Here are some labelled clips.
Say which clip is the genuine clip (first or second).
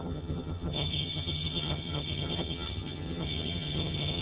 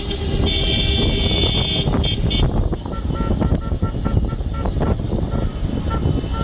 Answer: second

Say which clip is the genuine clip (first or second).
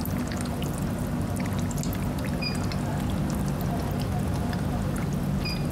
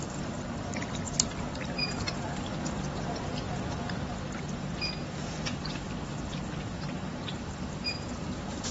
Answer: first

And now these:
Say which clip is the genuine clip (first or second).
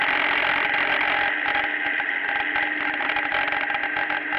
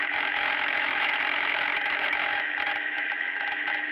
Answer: first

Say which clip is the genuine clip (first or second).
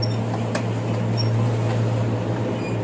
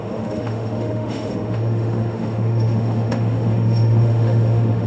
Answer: first